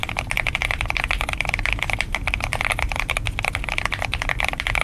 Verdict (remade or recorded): remade